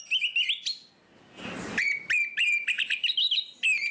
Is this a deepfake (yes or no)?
no